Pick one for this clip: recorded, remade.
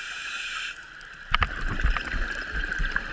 recorded